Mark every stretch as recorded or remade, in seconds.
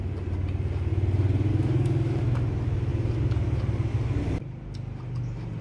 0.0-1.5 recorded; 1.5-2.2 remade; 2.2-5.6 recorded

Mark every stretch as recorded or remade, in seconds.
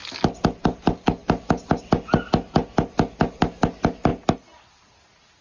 0.0-5.4 recorded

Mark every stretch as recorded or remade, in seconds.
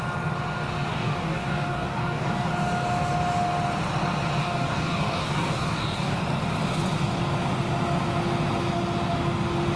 0.0-0.9 recorded; 0.9-2.5 remade; 2.5-4.4 recorded; 4.4-6.2 remade; 6.2-9.8 recorded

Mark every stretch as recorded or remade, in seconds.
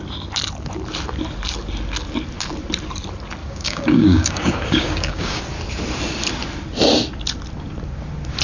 0.0-3.4 recorded; 3.4-5.4 remade; 5.4-8.4 recorded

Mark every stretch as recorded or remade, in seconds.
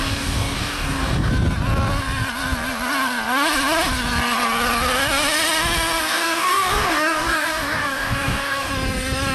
0.0-1.3 remade; 1.3-6.0 recorded; 6.0-8.7 remade; 8.7-9.3 recorded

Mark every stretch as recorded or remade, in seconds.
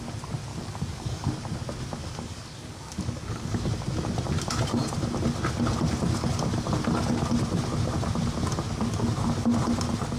0.0-0.5 recorded; 0.5-1.3 remade; 1.3-2.0 recorded; 2.0-3.7 remade; 3.7-10.2 recorded